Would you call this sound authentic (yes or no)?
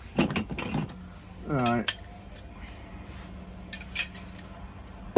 yes